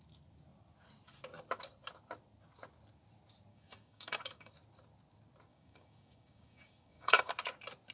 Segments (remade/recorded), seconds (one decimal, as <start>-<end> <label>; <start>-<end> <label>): 0.0-3.5 recorded; 3.5-4.5 remade; 4.5-5.5 recorded; 5.5-7.3 remade; 7.3-7.9 recorded